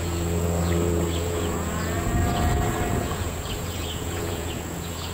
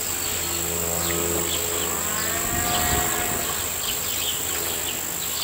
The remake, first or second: first